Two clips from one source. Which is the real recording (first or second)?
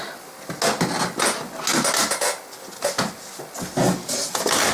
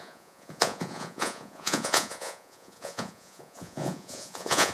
first